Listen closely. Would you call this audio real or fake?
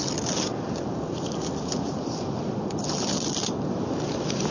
real